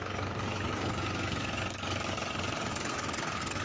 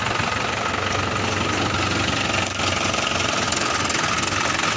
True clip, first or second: second